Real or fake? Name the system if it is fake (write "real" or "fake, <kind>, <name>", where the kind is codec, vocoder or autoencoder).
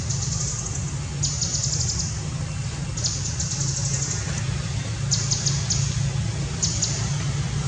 real